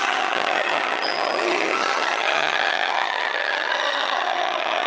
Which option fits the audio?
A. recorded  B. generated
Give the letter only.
B